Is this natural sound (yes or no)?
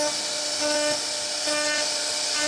yes